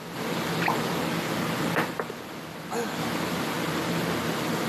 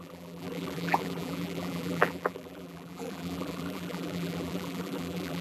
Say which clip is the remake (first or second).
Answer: second